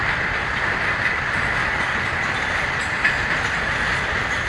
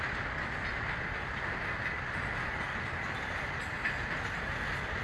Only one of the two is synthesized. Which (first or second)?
first